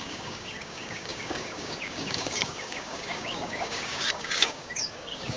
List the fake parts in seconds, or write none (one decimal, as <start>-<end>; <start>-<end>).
0.0-5.4